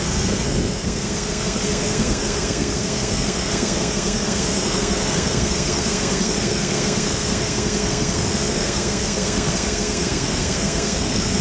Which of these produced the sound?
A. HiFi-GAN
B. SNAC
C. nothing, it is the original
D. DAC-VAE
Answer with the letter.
B